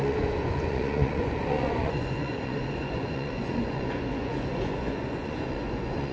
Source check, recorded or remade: remade